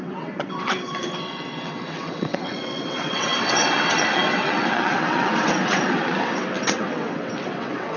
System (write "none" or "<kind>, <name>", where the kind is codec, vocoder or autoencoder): vocoder, WaveNeXt